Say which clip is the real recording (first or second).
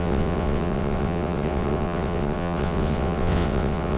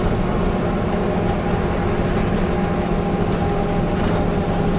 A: second